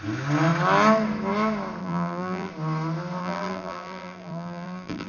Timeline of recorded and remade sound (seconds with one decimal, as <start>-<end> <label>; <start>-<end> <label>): 0.0-1.8 recorded; 1.8-2.5 remade; 2.5-3.2 recorded; 3.2-5.1 remade